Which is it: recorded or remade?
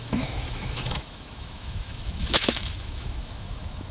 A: remade